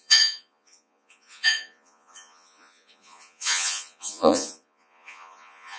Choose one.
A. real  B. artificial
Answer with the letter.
B